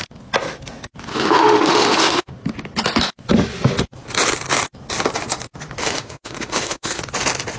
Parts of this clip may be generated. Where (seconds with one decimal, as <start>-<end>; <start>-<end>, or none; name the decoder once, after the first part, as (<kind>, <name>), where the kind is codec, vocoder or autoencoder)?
1.1-2.3 (autoencoder, DAC-VAE); 5.8-7.0